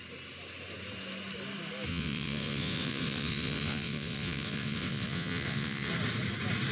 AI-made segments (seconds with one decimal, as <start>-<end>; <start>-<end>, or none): 1.9-5.9